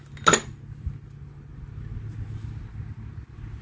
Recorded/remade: recorded